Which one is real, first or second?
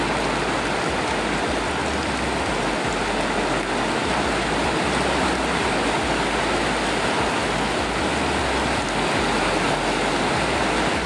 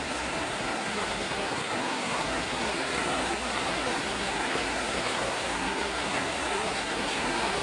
first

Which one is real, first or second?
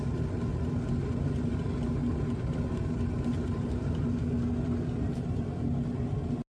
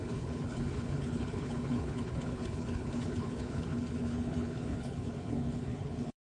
first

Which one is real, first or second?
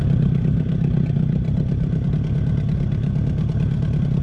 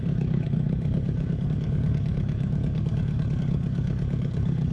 first